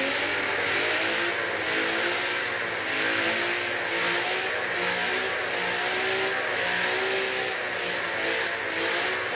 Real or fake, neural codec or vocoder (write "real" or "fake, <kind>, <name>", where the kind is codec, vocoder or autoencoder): real